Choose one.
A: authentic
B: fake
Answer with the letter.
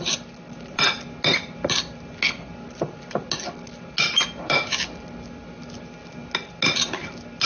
A